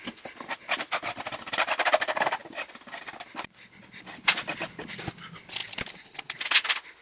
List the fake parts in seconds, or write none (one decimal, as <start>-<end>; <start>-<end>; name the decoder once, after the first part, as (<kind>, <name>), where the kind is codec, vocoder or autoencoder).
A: 5.6-6.4 (vocoder, BigVGAN v2)